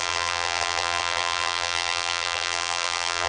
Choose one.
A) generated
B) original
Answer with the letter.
A